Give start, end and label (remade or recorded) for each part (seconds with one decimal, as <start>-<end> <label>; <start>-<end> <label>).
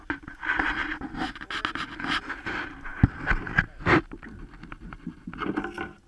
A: 0.0-6.1 recorded